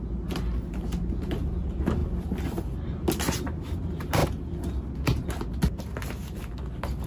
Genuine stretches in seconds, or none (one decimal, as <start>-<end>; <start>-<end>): 0.0-7.1

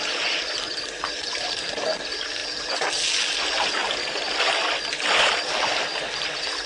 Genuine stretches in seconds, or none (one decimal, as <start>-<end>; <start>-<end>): 3.8-5.3

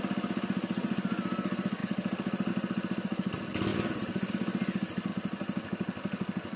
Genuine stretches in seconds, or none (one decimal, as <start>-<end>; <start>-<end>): 0.0-1.8; 2.5-3.7; 4.3-6.6

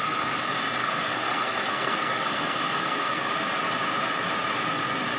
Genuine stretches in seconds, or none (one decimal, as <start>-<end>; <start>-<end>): 0.0-0.8; 3.3-5.2